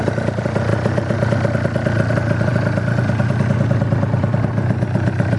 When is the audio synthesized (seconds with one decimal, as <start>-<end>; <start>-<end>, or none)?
none